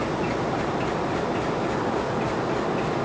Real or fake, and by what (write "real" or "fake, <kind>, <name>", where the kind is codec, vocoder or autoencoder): real